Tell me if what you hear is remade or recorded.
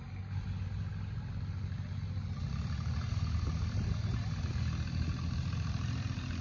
recorded